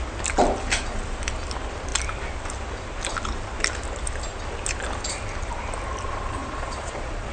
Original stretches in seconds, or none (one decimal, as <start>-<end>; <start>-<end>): 0.0-6.4